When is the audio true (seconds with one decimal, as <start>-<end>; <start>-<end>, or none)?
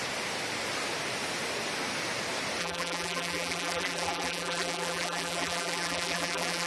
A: 0.0-2.6